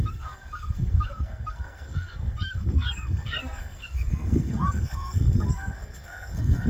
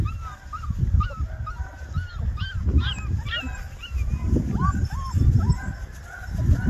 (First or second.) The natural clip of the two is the second